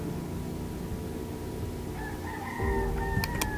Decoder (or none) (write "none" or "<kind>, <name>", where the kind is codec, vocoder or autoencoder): none